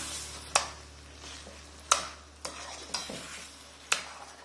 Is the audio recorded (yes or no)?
yes